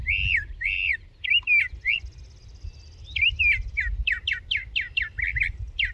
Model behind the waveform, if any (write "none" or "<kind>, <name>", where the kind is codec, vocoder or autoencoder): none